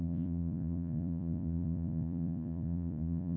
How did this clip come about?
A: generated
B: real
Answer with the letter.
A